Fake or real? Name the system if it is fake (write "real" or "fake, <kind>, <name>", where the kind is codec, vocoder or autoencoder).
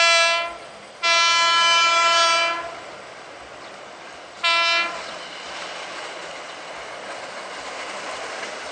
real